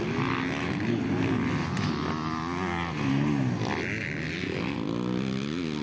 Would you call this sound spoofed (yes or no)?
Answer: no